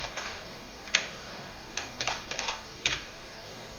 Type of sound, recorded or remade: remade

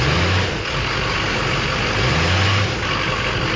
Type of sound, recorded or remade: recorded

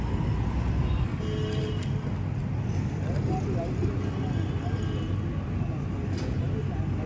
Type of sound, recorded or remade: recorded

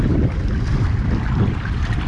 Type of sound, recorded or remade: recorded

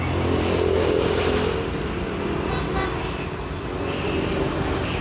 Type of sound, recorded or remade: recorded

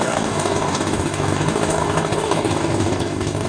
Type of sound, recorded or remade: remade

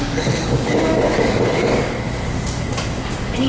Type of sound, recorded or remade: remade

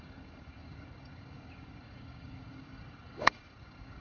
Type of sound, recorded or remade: remade